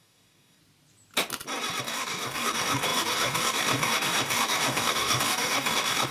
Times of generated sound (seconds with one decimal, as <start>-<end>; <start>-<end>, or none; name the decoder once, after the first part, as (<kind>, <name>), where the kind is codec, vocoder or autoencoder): 0.0-0.6 (codec, DAC); 1.8-6.1